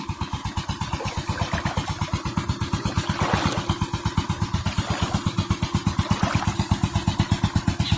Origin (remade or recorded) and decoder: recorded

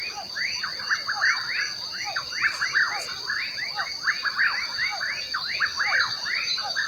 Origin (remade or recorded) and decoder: recorded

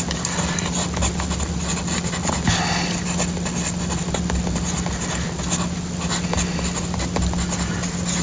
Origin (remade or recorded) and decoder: recorded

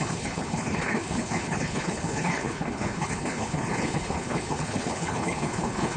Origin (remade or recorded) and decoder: remade, codec, HILCodec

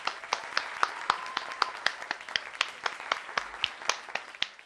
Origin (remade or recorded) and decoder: recorded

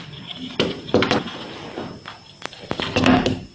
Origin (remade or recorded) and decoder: recorded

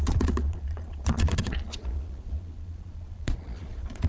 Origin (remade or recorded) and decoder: remade, vocoder, Vocos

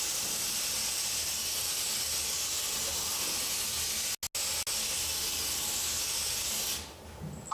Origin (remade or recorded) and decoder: recorded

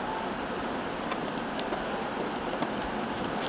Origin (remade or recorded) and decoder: recorded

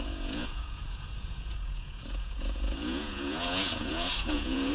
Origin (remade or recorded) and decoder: remade, vocoder, Vocos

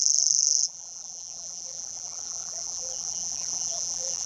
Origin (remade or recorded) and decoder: remade, vocoder, BigVGAN v2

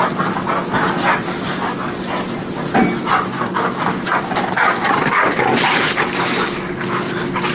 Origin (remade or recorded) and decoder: recorded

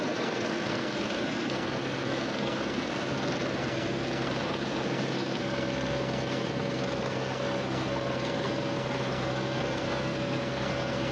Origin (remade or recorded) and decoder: remade, codec, SNAC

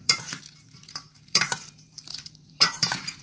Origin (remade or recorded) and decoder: remade, vocoder, BigVGAN v2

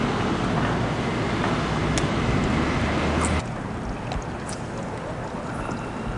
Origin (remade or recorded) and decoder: recorded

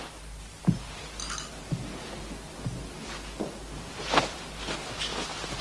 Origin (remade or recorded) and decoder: recorded